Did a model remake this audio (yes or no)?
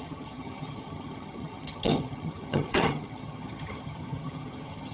yes